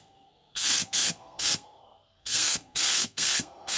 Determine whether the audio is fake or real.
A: fake